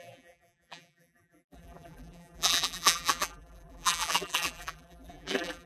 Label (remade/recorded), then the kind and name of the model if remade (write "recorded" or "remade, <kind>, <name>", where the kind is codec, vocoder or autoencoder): remade, vocoder, BigVGAN v2